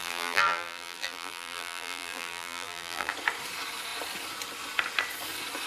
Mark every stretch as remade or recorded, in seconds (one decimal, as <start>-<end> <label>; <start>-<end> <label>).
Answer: 0.0-3.1 remade; 3.1-5.7 recorded